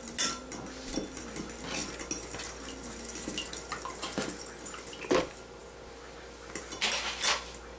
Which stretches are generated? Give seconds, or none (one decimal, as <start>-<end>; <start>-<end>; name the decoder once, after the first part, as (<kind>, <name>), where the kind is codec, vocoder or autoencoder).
none